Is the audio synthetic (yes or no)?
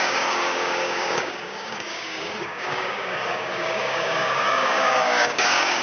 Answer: yes